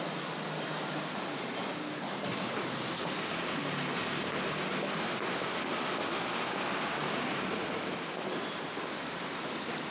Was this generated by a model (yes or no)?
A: no